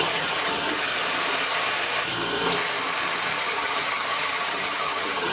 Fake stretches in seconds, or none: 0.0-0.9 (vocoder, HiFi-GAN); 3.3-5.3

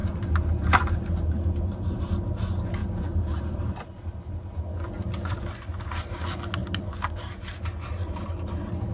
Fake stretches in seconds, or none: 0.0-2.1 (vocoder, BigVGAN v2); 2.8-4.6

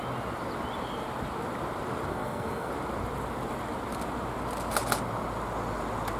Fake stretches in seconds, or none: 2.1-2.7 (codec, SNAC)

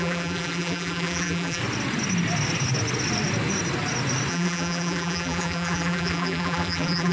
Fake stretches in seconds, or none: 0.0-1.6 (vocoder, BigVGAN v2); 4.3-7.1